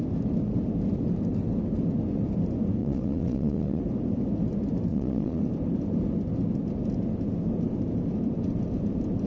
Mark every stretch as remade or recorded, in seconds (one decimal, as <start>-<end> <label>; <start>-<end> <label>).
0.0-2.8 recorded; 2.8-3.8 remade; 3.8-4.9 recorded; 4.9-5.4 remade; 5.4-9.3 recorded